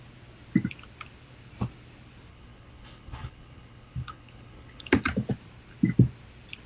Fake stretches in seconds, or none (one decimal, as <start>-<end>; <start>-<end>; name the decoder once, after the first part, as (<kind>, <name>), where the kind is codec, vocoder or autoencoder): 2.3-4.9 (codec, HILCodec)